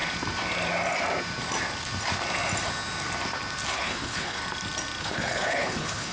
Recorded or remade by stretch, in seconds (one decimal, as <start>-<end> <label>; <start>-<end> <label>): 0.0-3.7 recorded; 3.7-4.4 remade; 4.4-5.0 recorded; 5.0-6.1 remade